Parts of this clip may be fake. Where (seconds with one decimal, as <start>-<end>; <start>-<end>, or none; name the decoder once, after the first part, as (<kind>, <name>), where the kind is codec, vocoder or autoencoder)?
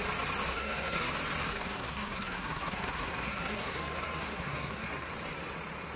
0.5-1.1 (codec, SNAC); 1.5-5.1